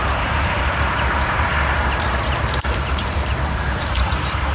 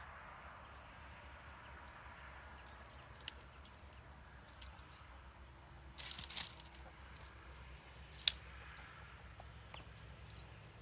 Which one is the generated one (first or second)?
first